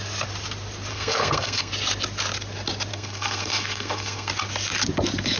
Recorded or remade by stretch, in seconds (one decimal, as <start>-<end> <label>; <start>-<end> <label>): 0.0-0.9 recorded; 0.9-1.7 remade; 1.7-2.9 recorded; 2.9-4.3 remade; 4.3-5.4 recorded